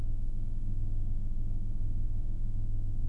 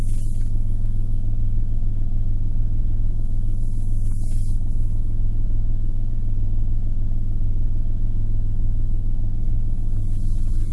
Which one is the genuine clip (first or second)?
second